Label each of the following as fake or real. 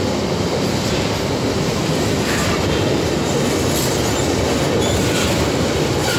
real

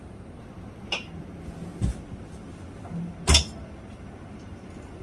real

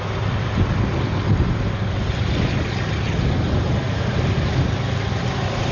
real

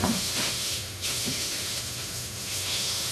fake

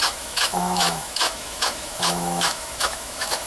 fake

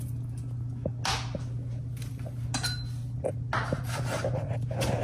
real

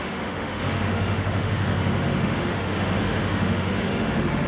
fake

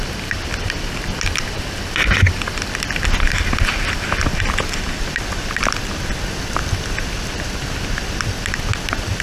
real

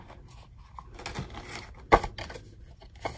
real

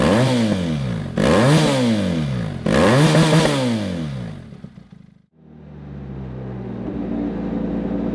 real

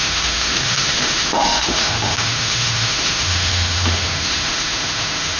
fake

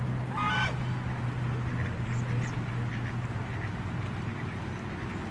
real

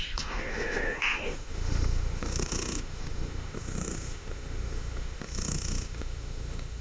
fake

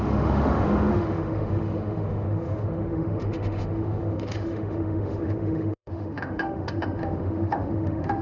fake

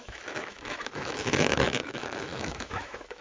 fake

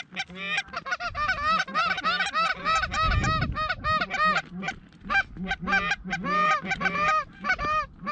real